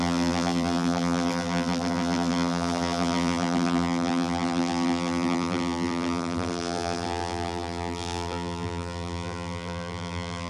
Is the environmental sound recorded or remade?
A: remade